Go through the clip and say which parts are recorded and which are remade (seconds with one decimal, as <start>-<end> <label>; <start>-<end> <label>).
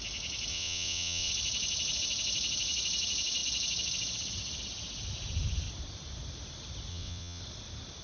0.0-0.5 recorded; 0.5-1.3 remade; 1.3-6.9 recorded; 6.9-7.4 remade; 7.4-8.0 recorded